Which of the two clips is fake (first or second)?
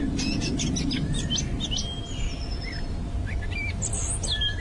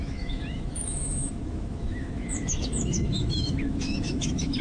second